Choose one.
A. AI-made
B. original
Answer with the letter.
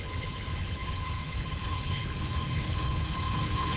A